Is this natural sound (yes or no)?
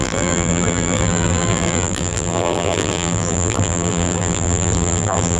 no